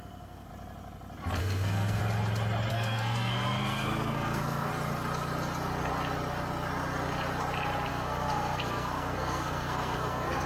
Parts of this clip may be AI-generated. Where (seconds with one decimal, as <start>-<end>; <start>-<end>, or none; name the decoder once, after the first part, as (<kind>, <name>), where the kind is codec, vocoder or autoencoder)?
0.0-0.5 (codec, SNAC); 1.4-2.0; 2.7-4.7; 7.9-10.5